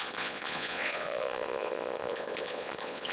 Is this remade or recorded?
remade